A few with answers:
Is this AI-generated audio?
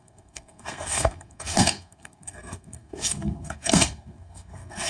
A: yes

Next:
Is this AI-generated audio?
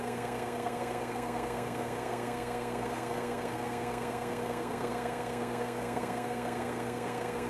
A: yes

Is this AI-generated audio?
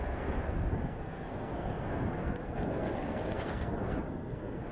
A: yes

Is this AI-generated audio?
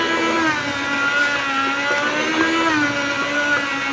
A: no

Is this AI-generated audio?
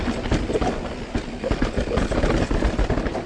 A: no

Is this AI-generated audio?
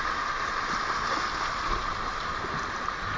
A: no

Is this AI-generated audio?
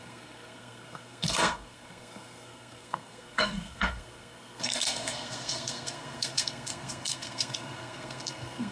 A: yes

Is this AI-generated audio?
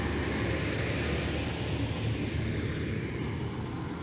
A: no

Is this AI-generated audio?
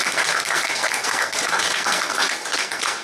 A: yes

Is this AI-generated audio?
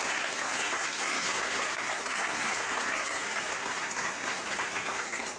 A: yes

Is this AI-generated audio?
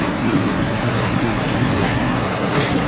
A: yes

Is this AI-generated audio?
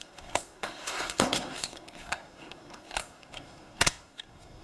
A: yes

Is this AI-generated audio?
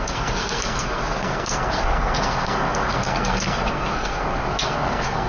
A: yes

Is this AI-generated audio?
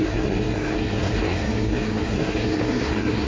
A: yes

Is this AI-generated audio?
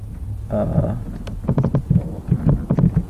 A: no